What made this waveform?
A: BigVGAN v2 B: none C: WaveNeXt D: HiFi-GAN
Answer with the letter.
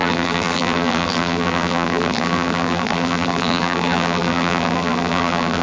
A